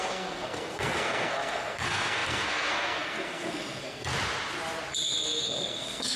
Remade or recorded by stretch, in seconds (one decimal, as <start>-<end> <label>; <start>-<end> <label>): 0.0-4.1 remade; 4.1-4.9 recorded; 4.9-6.2 remade